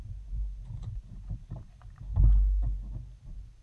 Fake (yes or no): no